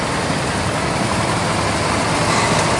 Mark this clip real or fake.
fake